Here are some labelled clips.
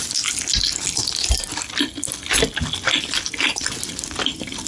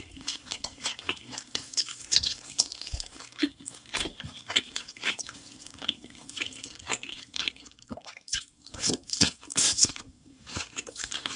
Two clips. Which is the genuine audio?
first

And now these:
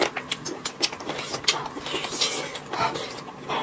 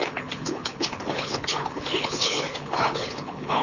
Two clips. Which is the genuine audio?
first